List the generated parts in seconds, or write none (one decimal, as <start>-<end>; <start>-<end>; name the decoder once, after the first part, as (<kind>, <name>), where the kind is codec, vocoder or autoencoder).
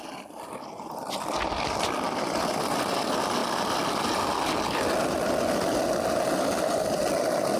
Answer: none